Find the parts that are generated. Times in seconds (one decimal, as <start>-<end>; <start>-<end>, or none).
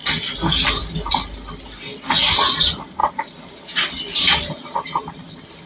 0.0-1.1; 1.9-2.5; 3.0-3.6